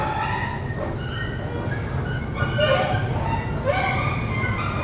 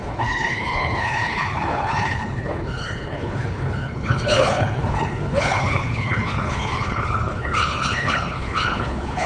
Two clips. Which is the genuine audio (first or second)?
first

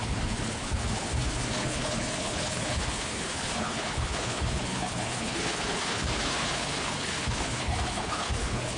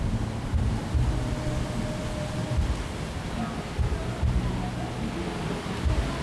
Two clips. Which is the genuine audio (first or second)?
second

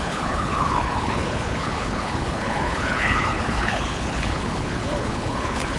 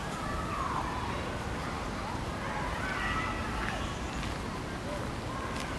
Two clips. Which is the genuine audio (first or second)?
second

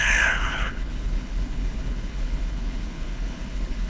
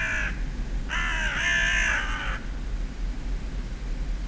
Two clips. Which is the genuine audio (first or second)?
second